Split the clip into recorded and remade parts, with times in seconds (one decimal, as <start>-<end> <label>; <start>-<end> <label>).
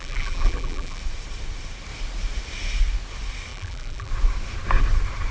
0.0-1.0 remade; 1.0-3.5 recorded; 3.5-4.1 remade; 4.1-5.3 recorded